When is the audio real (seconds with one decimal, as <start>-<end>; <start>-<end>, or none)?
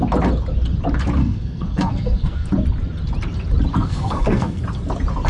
0.0-1.2; 2.5-3.7; 4.6-5.3